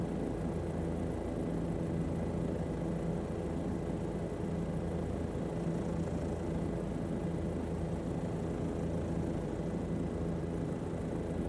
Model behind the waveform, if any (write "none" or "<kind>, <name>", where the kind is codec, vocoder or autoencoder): none